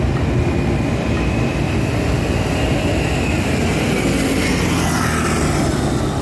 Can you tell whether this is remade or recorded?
recorded